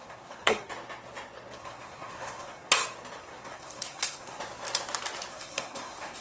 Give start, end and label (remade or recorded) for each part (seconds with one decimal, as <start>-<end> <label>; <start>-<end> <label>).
0.0-0.7 remade; 0.7-1.6 recorded; 1.6-2.7 remade; 2.7-3.2 recorded; 3.2-4.4 remade; 4.4-5.3 recorded; 5.3-6.2 remade